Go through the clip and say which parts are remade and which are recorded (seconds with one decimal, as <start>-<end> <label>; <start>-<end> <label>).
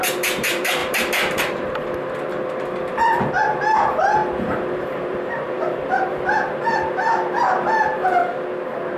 0.0-2.3 remade; 2.3-3.6 recorded; 3.6-8.2 remade; 8.2-9.0 recorded